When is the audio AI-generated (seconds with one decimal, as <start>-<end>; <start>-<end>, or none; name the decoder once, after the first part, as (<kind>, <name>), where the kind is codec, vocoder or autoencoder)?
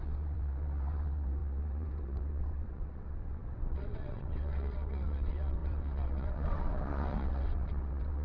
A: 0.0-8.2 (vocoder, WaveNeXt)